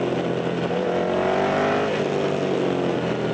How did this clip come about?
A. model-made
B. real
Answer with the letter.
B